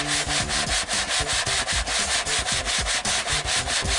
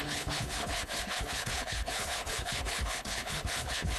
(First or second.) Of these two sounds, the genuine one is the first